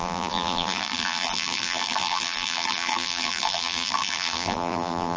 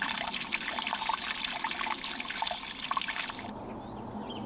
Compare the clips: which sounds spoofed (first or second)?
first